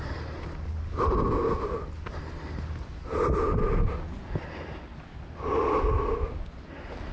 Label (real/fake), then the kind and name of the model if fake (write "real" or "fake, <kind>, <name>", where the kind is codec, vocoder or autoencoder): real